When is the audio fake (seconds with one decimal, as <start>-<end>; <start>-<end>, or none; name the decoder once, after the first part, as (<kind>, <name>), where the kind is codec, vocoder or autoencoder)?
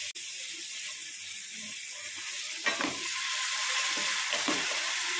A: none